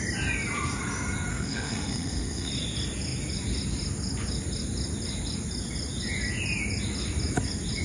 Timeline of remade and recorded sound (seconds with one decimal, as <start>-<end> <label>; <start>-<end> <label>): 0.0-1.3 recorded; 1.3-2.5 remade; 2.5-7.8 recorded